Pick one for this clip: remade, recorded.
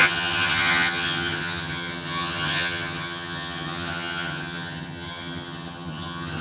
remade